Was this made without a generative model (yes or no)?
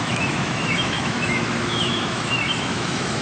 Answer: no